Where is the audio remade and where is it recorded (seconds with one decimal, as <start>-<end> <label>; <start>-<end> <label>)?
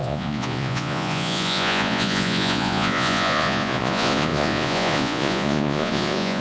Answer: 0.0-6.4 remade